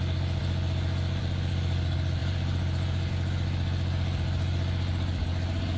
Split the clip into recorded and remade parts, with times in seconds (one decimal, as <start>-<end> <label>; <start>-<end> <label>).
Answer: 0.0-2.2 recorded; 2.2-3.1 remade; 3.1-5.8 recorded

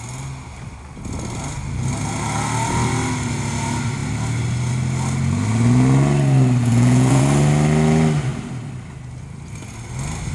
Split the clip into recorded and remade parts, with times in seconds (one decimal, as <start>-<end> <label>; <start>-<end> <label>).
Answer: 0.0-6.6 recorded; 6.6-7.2 remade; 7.2-10.3 recorded

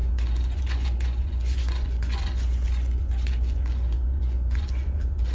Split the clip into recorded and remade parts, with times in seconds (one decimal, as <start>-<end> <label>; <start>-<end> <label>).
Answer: 0.0-5.3 remade

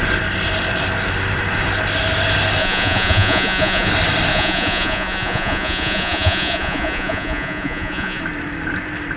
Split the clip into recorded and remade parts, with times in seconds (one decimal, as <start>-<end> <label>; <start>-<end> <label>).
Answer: 0.0-2.6 recorded; 2.6-3.9 remade; 3.9-4.3 recorded; 4.3-8.2 remade; 8.2-9.2 recorded

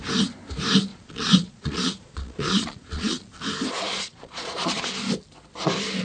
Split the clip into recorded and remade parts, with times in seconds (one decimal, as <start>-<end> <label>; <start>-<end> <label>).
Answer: 0.0-0.9 recorded; 0.9-3.3 remade; 3.3-3.9 recorded; 3.9-4.8 remade; 4.8-6.0 recorded

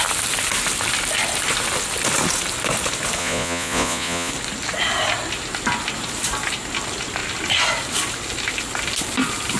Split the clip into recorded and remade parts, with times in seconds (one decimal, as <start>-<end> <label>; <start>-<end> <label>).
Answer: 0.0-3.2 recorded; 3.2-4.3 remade; 4.3-9.6 recorded